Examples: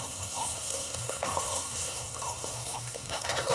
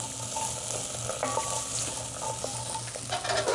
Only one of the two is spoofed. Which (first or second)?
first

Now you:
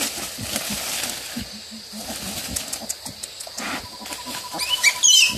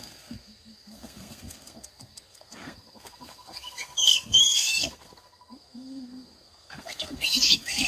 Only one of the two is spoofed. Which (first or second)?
second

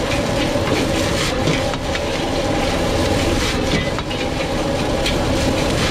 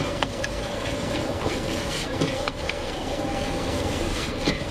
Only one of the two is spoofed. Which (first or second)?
second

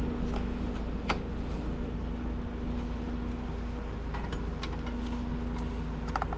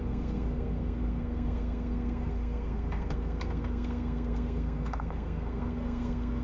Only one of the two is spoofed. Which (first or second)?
second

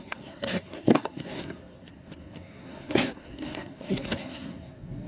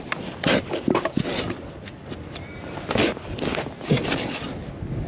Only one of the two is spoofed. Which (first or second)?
first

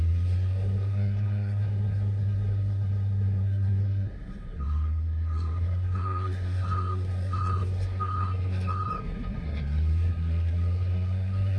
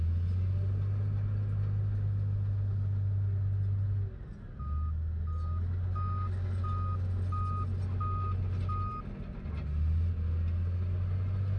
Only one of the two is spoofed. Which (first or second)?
first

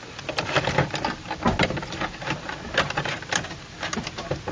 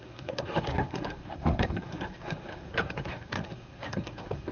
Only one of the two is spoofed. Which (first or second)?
second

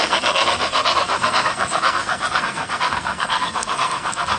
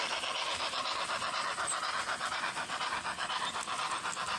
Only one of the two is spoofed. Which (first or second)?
first